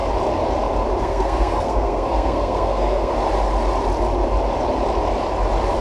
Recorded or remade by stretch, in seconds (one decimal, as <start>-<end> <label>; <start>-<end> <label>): 0.0-1.0 recorded; 1.0-3.1 remade; 3.1-5.8 recorded